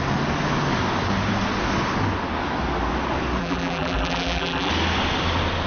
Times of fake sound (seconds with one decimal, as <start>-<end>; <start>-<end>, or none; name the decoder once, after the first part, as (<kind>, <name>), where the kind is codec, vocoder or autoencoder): 3.4-4.7 (vocoder, BigVGAN v2)